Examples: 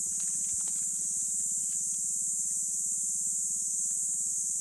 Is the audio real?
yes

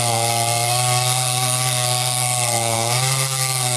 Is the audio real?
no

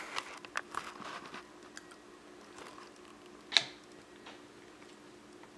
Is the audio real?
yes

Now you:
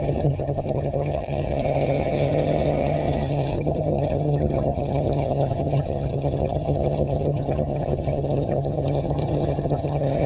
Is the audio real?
no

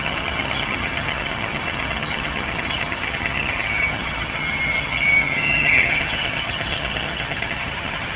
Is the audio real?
no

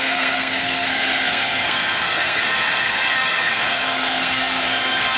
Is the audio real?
no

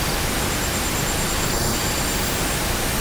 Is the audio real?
yes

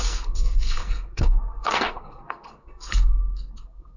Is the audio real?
no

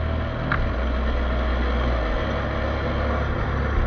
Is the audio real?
yes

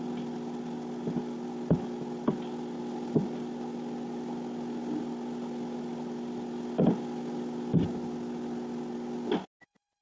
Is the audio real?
yes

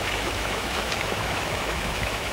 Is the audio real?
no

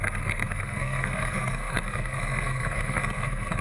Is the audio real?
no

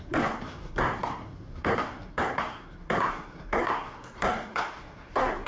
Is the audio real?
no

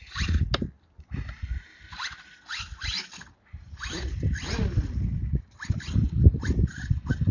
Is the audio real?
yes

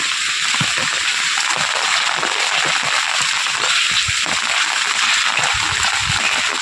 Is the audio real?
yes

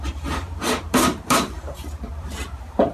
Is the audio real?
no